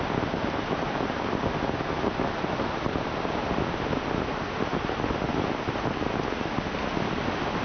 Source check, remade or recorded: recorded